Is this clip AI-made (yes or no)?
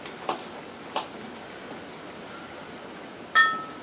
no